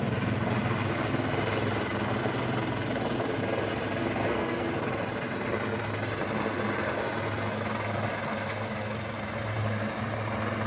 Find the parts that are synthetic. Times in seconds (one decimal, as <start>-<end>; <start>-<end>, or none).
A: 4.2-4.7